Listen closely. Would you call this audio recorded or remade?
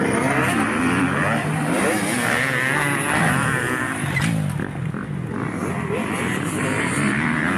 recorded